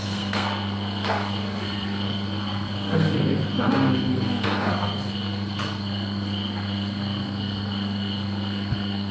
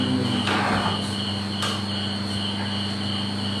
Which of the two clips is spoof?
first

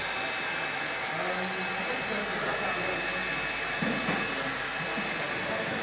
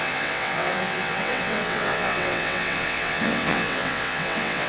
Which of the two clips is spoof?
second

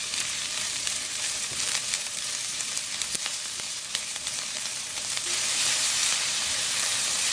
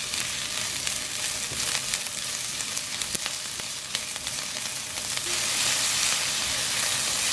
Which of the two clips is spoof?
first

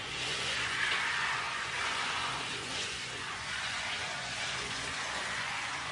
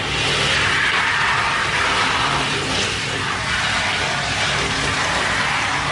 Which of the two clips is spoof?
first